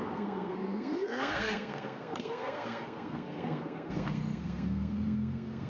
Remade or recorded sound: remade